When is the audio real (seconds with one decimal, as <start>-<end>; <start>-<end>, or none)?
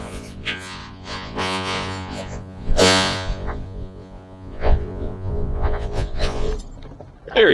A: 6.5-7.5